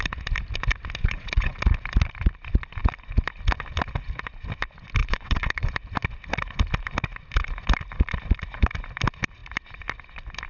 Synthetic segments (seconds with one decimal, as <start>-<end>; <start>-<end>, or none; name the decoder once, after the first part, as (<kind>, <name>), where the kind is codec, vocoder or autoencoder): 1.0-1.6 (vocoder, WaveNeXt); 5.0-5.7